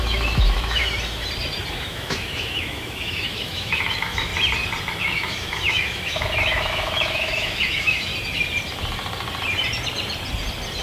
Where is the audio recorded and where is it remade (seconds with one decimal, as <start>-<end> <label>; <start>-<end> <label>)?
0.0-0.8 remade; 0.8-1.7 recorded; 1.7-4.3 remade; 4.3-5.0 recorded; 5.0-8.1 remade; 8.1-10.8 recorded